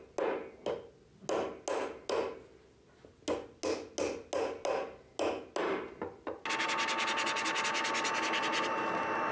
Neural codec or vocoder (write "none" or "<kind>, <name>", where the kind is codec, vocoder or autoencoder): none